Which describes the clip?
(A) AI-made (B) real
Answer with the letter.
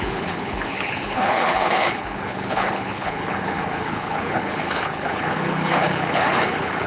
A